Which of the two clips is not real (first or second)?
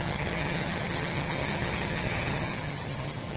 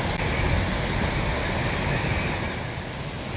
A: first